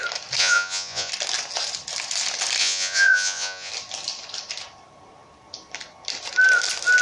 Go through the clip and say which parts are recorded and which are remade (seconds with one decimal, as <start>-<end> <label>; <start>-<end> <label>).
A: 0.0-0.4 recorded; 0.4-1.1 remade; 1.1-2.6 recorded; 2.6-3.7 remade; 3.7-7.0 recorded